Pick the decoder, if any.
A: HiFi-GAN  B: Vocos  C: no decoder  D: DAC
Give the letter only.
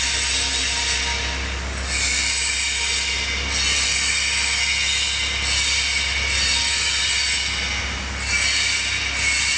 C